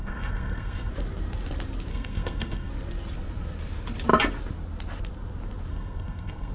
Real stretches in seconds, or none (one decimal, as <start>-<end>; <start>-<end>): 0.9-1.9; 2.7-5.7